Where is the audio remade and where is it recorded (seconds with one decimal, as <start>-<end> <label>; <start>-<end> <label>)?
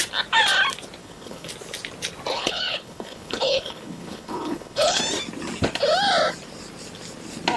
0.0-1.0 recorded; 1.0-1.5 remade; 1.5-2.3 recorded; 2.3-5.0 remade; 5.0-7.6 recorded